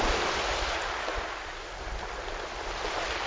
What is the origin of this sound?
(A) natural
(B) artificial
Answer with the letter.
A